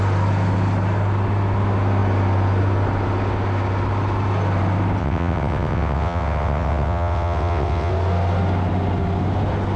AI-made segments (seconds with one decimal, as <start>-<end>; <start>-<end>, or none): 5.0-7.9